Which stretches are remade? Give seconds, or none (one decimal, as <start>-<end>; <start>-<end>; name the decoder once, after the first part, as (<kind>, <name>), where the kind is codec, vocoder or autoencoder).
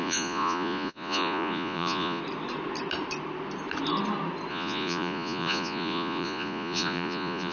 0.0-2.2 (vocoder, Vocos); 4.5-7.5